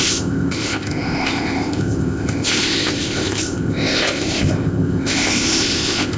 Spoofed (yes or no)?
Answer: yes